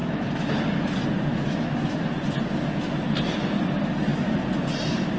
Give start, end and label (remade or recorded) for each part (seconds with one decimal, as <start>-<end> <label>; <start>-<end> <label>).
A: 0.0-0.5 remade; 0.5-1.3 recorded; 1.3-2.1 remade; 2.1-5.2 recorded